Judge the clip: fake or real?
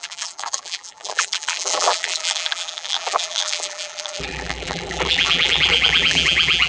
fake